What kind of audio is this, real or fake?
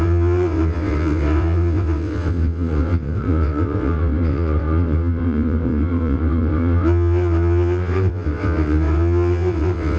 fake